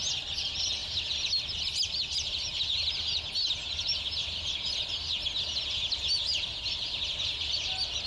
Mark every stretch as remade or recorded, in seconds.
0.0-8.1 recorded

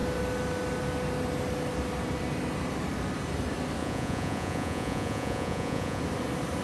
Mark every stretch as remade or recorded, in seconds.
0.0-3.8 recorded; 3.8-6.0 remade; 6.0-6.6 recorded

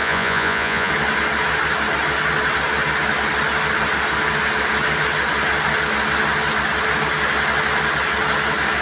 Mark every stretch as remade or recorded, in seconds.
0.0-0.9 remade; 0.9-8.8 recorded

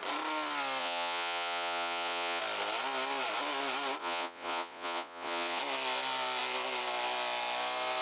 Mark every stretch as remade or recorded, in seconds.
0.0-0.8 recorded; 0.8-2.4 remade; 2.4-4.0 recorded; 4.0-5.6 remade; 5.6-8.0 recorded

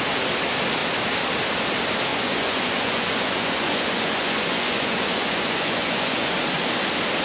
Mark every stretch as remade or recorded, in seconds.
0.0-2.1 recorded; 2.1-6.4 remade; 6.4-7.2 recorded

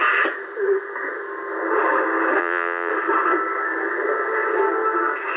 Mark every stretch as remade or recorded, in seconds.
0.0-2.4 recorded; 2.4-2.9 remade; 2.9-5.4 recorded

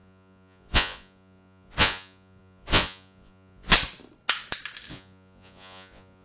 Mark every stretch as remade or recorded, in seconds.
0.0-3.7 remade; 3.7-4.9 recorded; 4.9-6.2 remade

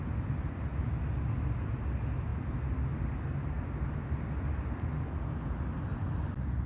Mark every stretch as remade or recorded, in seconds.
0.0-6.7 recorded